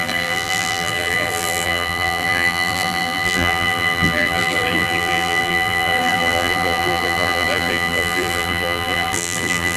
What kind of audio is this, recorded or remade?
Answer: remade